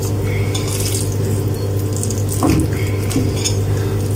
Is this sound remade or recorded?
recorded